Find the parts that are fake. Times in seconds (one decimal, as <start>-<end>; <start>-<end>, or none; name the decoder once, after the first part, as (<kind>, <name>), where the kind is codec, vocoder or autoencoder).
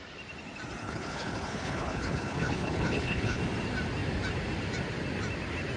0.8-3.4 (codec, HILCodec)